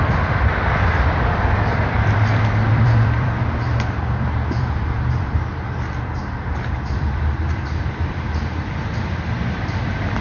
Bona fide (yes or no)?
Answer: no